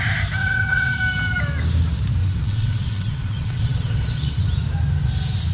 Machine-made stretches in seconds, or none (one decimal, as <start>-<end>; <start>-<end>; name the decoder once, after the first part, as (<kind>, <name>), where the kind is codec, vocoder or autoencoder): 0.4-1.0 (vocoder, WaveNeXt); 2.2-4.4